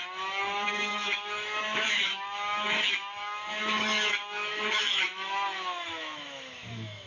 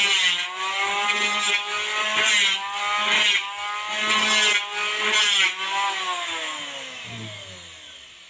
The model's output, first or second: first